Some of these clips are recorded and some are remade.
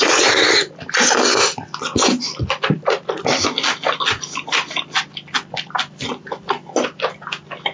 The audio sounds recorded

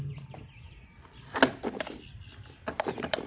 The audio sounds recorded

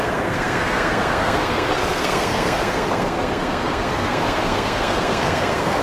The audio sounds remade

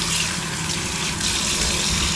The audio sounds recorded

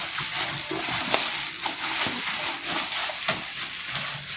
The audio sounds recorded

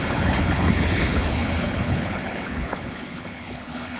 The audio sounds remade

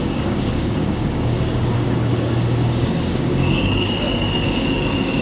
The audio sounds remade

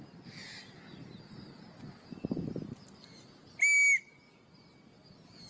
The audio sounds recorded